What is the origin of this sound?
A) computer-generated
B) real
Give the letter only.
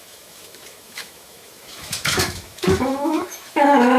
A